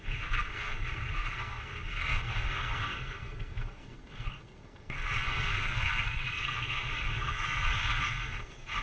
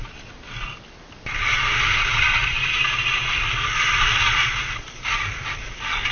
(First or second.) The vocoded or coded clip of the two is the first